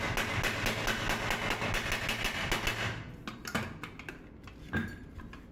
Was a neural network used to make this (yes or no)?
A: no